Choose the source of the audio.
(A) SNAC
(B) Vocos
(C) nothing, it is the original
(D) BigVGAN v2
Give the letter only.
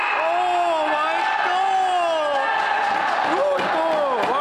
C